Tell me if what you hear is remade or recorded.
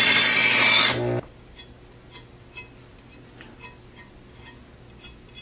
recorded